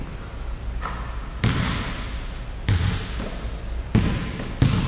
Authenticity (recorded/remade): recorded